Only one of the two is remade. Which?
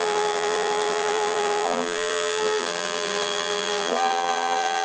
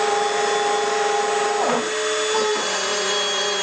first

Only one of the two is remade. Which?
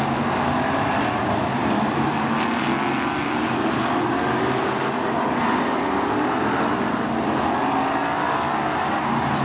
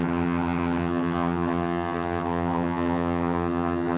second